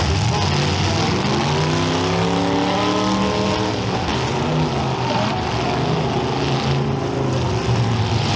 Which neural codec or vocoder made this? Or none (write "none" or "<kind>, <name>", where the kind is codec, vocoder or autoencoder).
none